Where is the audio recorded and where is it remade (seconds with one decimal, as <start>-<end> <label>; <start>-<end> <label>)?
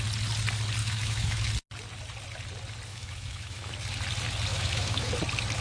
0.0-0.8 recorded; 0.8-1.5 remade; 1.5-2.9 recorded; 2.9-3.7 remade; 3.7-4.5 recorded; 4.5-5.1 remade; 5.1-5.6 recorded